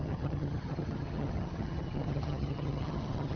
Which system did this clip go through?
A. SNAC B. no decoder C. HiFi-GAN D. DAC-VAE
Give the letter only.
C